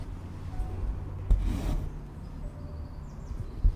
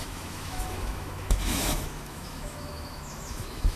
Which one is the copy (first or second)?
second